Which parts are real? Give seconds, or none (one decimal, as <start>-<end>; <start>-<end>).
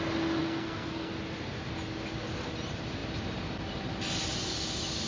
0.0-0.4; 1.1-5.1